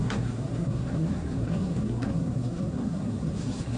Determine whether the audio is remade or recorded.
remade